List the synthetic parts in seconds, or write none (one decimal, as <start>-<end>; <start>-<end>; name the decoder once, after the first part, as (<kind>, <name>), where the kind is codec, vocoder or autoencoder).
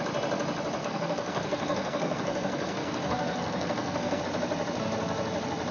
0.8-4.2 (codec, SNAC)